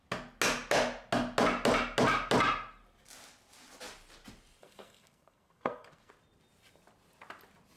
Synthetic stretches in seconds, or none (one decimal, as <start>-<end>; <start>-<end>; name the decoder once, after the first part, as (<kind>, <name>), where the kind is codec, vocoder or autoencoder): 4.6-6.1 (codec, SNAC)